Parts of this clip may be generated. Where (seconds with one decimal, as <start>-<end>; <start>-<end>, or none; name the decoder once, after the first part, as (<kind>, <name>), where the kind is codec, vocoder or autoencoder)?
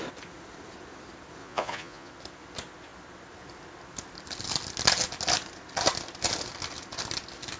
1.4-2.1 (vocoder, Vocos)